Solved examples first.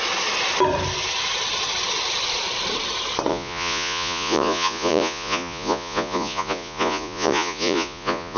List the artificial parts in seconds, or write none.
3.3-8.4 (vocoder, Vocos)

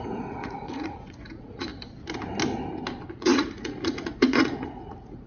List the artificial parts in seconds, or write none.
0.0-1.7 (vocoder, Vocos); 3.1-5.3

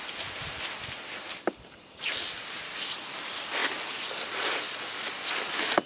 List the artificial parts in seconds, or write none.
none

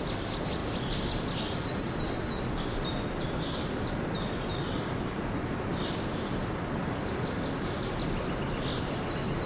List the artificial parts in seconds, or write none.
none